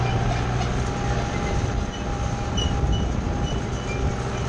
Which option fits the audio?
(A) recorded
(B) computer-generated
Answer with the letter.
A